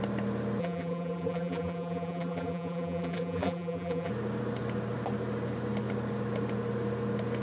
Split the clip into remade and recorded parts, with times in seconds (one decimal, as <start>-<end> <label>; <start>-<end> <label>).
0.0-0.6 recorded; 0.6-4.1 remade; 4.1-7.4 recorded